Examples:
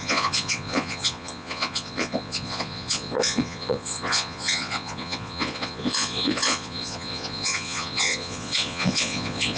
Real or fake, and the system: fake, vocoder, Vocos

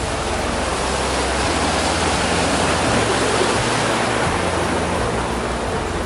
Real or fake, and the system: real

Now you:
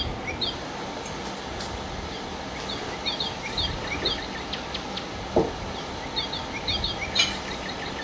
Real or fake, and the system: real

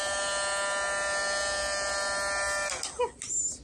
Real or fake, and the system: real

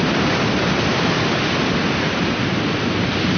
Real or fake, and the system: real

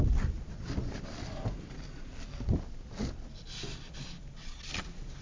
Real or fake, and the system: real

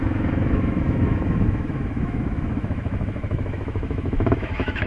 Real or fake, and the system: fake, autoencoder, DAC-VAE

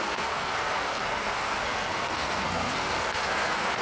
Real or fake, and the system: fake, codec, SNAC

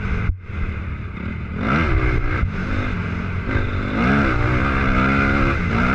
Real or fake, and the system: real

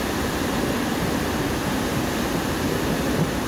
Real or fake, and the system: real